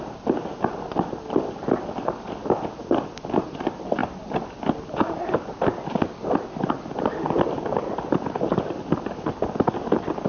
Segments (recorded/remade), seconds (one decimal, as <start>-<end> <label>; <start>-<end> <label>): 0.0-10.3 recorded

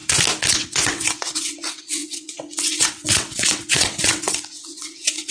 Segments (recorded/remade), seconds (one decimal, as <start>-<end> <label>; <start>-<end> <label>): 0.0-0.5 recorded; 0.5-5.3 remade

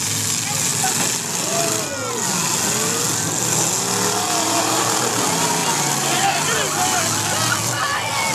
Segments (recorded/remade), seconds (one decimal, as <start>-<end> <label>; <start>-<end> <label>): 0.0-8.3 recorded

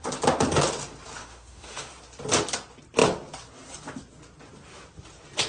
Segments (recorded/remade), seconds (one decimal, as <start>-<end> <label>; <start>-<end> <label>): 0.0-1.2 recorded; 1.2-1.9 remade; 1.9-5.5 recorded

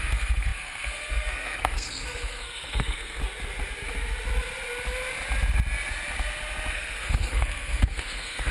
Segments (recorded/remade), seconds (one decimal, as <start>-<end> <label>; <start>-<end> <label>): 0.0-3.2 remade; 3.2-6.7 recorded; 6.7-8.5 remade

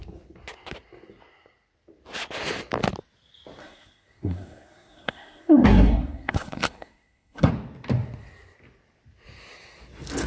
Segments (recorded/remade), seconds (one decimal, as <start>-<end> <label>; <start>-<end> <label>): 0.0-3.6 recorded; 3.6-7.5 remade; 7.5-10.3 recorded

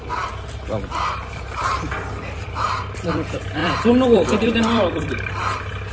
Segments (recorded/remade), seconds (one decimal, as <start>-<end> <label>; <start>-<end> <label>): 0.0-5.9 remade